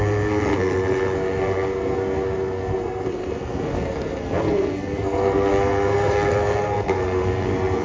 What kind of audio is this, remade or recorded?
remade